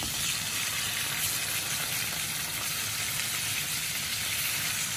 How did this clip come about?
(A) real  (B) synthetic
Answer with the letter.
A